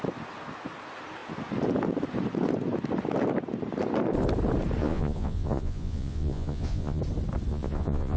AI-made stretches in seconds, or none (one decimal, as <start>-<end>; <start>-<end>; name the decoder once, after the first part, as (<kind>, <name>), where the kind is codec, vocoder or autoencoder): 4.8-7.0 (vocoder, Vocos); 7.5-8.2